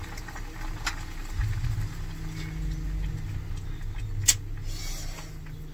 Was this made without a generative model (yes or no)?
yes